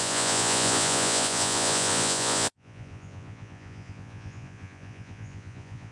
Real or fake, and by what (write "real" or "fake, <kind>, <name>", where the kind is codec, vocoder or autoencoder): fake, vocoder, Vocos